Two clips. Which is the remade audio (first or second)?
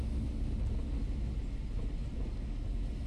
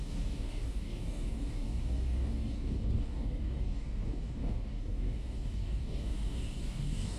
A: second